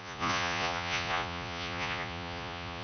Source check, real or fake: fake